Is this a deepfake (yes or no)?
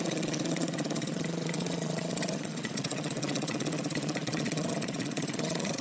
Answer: yes